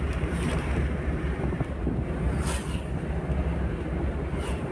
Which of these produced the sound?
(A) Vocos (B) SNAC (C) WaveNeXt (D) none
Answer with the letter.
D